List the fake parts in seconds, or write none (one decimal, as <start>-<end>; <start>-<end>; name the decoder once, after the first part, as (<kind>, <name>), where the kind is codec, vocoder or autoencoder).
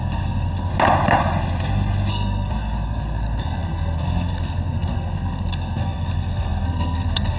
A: 0.0-0.7 (codec, SNAC); 2.1-7.4